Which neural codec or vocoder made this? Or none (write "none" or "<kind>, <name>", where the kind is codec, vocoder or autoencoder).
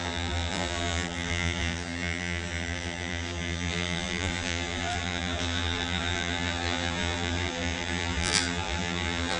vocoder, BigVGAN v2